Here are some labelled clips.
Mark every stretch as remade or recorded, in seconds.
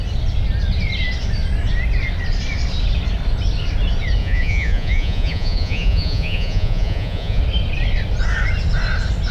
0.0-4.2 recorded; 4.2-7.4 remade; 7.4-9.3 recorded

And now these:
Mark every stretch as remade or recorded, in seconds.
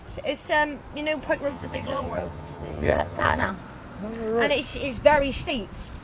0.0-1.5 recorded; 1.5-3.5 remade; 3.5-6.0 recorded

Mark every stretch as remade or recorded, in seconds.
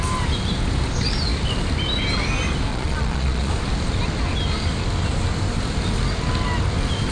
0.0-2.7 recorded; 2.7-3.5 remade; 3.5-7.1 recorded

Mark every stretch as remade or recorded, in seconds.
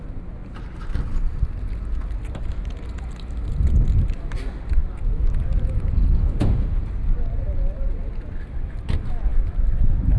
0.0-6.2 recorded; 6.2-6.8 remade; 6.8-10.2 recorded